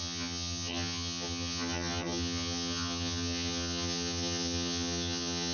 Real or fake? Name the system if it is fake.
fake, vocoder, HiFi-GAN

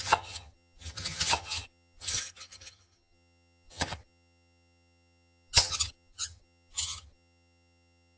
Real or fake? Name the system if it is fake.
fake, vocoder, HiFi-GAN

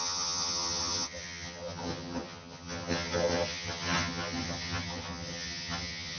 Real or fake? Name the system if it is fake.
fake, vocoder, HiFi-GAN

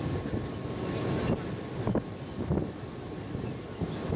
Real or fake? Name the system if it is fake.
real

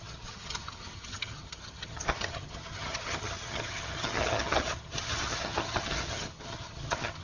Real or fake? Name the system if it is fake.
fake, vocoder, HiFi-GAN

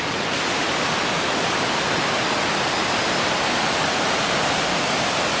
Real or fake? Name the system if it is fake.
real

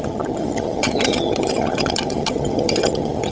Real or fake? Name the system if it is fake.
fake, vocoder, HiFi-GAN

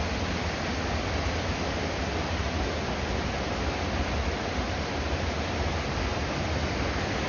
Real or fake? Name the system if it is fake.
real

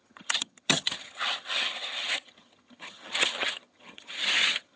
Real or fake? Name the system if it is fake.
fake, vocoder, HiFi-GAN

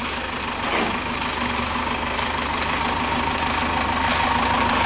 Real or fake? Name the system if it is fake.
real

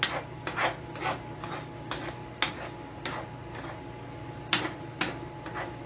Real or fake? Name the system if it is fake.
real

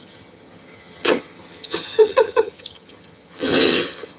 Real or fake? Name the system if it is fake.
fake, vocoder, HiFi-GAN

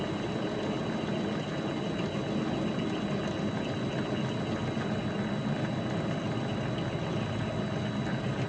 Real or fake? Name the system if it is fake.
real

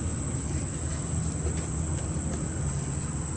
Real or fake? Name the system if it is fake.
real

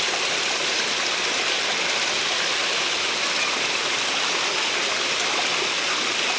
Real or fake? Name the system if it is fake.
real